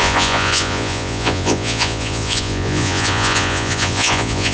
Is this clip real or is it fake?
fake